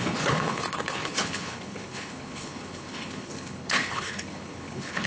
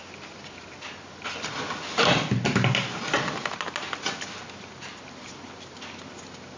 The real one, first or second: second